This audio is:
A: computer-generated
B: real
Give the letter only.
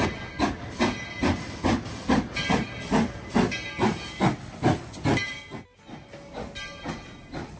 B